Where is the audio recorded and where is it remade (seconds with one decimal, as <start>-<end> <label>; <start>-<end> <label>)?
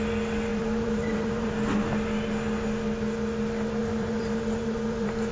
0.0-0.5 recorded; 0.5-1.5 remade; 1.5-3.8 recorded; 3.8-5.3 remade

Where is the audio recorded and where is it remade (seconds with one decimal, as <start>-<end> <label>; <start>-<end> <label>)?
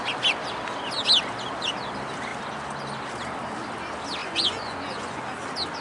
0.0-4.2 recorded; 4.2-5.2 remade; 5.2-5.8 recorded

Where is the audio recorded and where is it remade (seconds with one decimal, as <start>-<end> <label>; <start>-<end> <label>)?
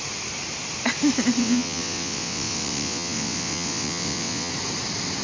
0.0-1.4 recorded; 1.4-4.5 remade; 4.5-5.2 recorded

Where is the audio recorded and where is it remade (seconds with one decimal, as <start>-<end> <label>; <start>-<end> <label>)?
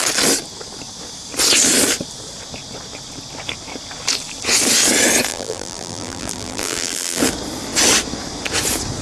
0.0-5.3 recorded; 5.3-7.2 remade; 7.2-9.0 recorded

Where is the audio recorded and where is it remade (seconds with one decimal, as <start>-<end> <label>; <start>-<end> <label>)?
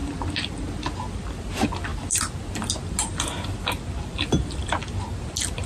0.0-5.7 recorded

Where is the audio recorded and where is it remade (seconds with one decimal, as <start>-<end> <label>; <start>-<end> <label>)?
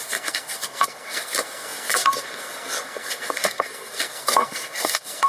0.0-5.3 remade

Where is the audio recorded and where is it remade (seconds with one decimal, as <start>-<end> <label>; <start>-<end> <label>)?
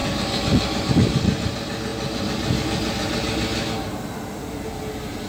0.0-5.3 recorded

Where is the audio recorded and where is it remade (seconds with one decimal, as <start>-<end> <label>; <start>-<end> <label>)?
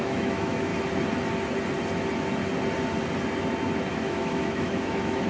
0.0-0.7 remade; 0.7-3.9 recorded; 3.9-5.3 remade